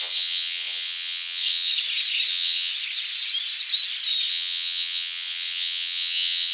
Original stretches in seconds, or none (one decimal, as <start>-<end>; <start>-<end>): 1.7-2.3; 2.7-4.3